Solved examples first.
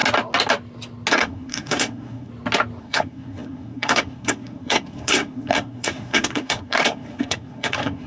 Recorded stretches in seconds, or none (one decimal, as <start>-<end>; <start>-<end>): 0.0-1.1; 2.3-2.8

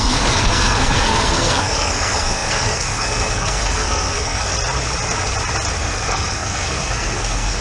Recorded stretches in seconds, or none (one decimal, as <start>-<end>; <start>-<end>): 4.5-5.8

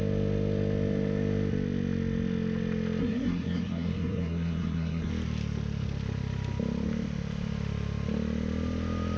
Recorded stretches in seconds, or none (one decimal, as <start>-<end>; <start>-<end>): 0.0-3.0; 5.1-9.2